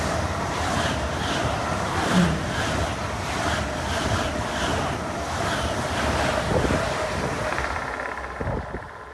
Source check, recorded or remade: recorded